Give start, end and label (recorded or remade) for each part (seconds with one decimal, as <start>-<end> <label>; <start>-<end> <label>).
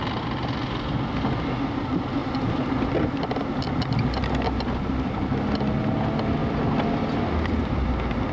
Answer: 0.0-2.2 recorded; 2.2-3.2 remade; 3.2-6.4 recorded; 6.4-7.9 remade; 7.9-8.3 recorded